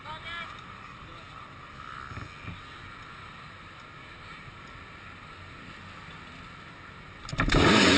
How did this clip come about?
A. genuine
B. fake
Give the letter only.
A